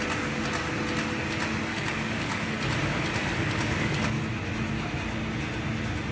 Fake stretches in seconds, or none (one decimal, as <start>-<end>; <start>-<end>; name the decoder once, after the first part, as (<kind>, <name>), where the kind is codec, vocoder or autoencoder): 1.7-2.4 (codec, DAC); 3.2-4.2